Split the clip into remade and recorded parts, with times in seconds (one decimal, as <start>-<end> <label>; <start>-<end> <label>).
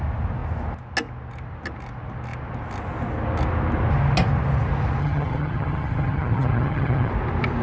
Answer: 0.0-5.0 recorded; 5.0-7.1 remade; 7.1-7.6 recorded